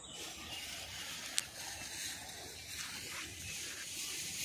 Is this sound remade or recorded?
recorded